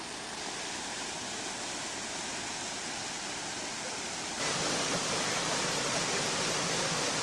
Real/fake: real